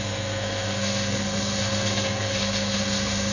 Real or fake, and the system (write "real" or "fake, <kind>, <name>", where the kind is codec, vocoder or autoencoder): fake, codec, SNAC